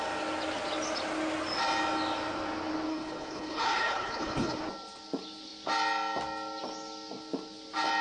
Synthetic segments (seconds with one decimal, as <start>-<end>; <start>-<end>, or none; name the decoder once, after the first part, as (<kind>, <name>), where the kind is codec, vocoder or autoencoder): 2.9-4.6 (codec, HILCodec)

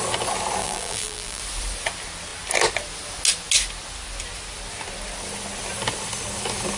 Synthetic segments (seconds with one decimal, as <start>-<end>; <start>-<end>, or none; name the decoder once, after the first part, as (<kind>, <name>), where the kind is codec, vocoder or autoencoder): 0.6-1.4 (vocoder, BigVGAN v2)

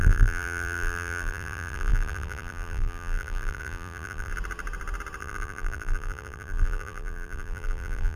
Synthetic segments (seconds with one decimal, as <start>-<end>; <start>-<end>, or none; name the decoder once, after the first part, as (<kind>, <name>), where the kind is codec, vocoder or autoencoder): 0.0-4.3 (vocoder, BigVGAN v2); 5.2-8.2

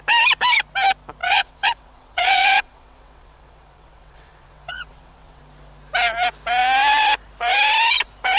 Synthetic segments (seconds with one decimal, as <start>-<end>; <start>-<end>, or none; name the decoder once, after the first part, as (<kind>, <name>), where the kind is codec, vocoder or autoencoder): 1.2-5.4 (vocoder, WaveNeXt)

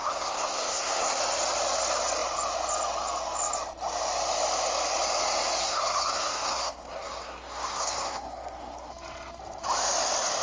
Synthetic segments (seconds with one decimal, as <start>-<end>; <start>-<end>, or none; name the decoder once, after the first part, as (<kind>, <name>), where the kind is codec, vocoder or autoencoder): 0.0-1.2 (codec, SNAC); 5.6-8.9

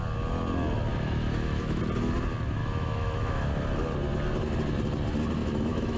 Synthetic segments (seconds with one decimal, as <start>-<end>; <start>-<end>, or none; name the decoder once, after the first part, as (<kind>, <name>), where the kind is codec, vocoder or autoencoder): 0.9-1.8 (autoencoder, DAC-VAE); 2.6-3.5; 5.4-6.0